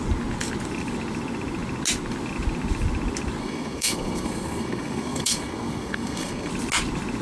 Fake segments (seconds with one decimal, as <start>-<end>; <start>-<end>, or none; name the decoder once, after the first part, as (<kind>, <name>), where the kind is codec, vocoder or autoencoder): 3.4-6.5 (codec, SNAC)